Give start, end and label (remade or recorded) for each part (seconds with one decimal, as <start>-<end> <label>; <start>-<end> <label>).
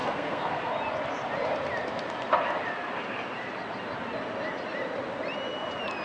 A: 0.0-0.7 remade; 0.7-6.0 recorded